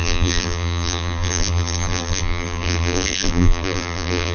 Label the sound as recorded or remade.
remade